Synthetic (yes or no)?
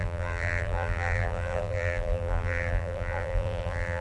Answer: yes